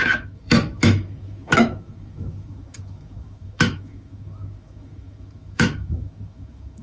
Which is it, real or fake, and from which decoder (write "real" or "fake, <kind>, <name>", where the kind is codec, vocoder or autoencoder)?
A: fake, autoencoder, DAC-VAE